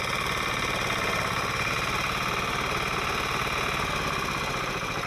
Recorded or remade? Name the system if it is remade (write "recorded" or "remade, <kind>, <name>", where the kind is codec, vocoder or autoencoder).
recorded